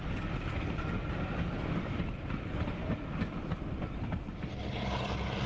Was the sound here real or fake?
real